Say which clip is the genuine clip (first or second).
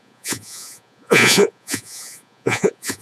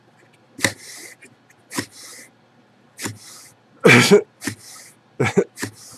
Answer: second